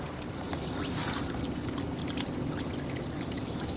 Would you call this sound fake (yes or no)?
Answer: no